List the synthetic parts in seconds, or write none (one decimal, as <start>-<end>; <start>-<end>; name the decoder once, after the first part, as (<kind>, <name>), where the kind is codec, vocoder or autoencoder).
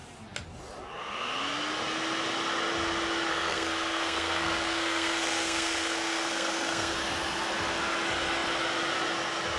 3.3-6.9 (codec, SNAC)